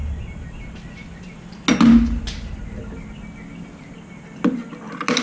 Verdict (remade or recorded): recorded